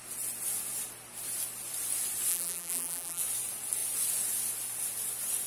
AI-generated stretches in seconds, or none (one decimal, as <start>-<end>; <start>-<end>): 2.3-3.2